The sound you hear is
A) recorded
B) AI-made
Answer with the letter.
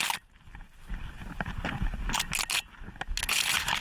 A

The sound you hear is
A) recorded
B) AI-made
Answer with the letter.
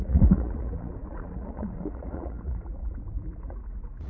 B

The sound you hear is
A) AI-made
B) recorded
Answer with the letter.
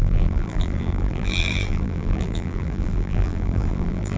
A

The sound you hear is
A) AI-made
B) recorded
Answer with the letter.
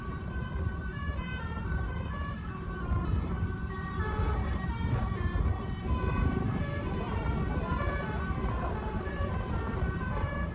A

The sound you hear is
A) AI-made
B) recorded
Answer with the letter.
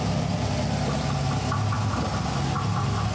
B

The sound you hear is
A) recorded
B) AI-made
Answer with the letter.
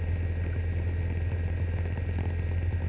A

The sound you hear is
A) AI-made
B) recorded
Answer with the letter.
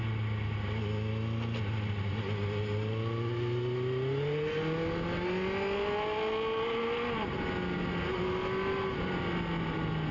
B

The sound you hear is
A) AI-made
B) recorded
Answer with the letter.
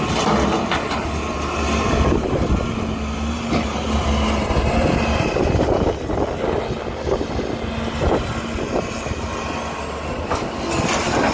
B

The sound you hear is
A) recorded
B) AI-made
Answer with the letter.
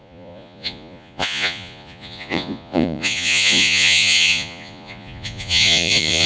B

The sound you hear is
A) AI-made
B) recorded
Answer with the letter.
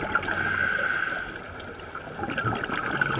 B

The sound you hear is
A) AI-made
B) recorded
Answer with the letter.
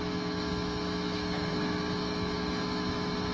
A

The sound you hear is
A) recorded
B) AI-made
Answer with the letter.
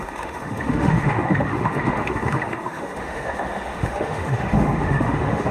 B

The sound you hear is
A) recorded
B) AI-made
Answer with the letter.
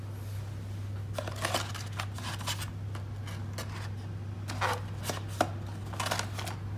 A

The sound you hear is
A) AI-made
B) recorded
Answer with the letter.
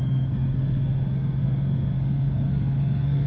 A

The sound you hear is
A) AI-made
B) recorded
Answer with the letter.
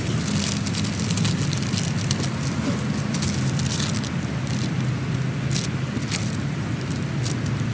B